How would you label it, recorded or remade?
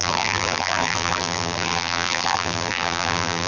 remade